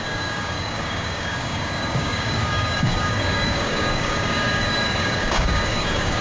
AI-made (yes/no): yes